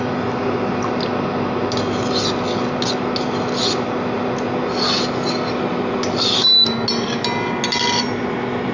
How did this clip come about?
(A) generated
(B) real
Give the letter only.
B